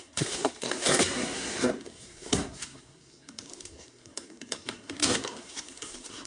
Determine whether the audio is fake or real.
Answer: fake